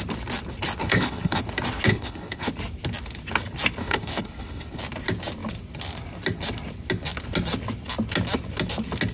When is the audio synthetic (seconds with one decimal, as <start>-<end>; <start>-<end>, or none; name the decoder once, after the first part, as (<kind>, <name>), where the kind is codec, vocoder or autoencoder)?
0.8-1.4 (codec, HILCodec); 1.9-2.5; 3.8-4.8